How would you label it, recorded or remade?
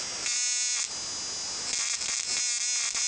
recorded